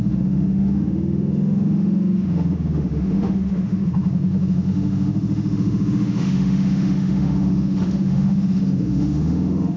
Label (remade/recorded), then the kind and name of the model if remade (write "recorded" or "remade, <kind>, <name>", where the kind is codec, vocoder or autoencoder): remade, autoencoder, DAC-VAE